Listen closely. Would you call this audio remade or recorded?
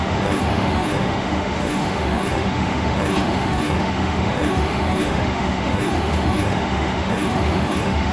remade